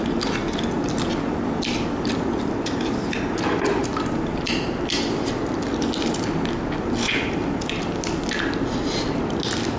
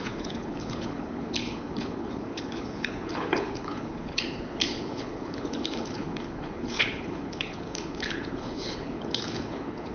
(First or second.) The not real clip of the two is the second